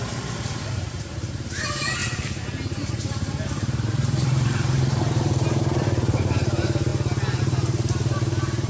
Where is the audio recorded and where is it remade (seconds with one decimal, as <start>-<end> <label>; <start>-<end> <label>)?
0.0-2.0 remade; 2.0-2.9 recorded; 2.9-6.9 remade; 6.9-7.4 recorded; 7.4-8.7 remade